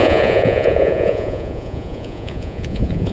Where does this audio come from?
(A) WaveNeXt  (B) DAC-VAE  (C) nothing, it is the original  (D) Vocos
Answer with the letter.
D